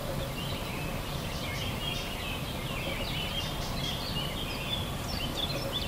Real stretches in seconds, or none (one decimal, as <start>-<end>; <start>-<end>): 0.0-1.0; 2.6-5.0